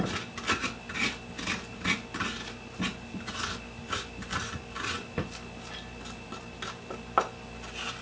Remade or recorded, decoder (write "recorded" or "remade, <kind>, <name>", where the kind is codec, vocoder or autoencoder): recorded